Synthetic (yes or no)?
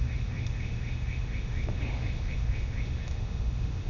yes